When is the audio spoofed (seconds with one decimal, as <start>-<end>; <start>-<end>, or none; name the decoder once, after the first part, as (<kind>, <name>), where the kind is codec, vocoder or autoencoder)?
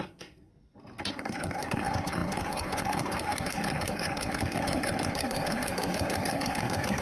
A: 0.0-0.5 (codec, SNAC); 1.1-7.0